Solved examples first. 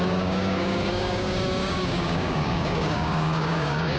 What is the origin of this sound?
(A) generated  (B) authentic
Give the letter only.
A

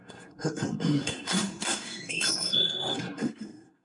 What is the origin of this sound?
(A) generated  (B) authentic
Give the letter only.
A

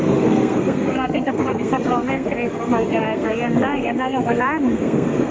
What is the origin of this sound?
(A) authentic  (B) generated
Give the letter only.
B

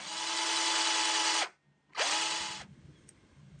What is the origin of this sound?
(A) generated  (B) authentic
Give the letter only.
B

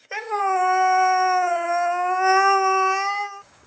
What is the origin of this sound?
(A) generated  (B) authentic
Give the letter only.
A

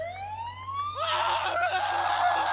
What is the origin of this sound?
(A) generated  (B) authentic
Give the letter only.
B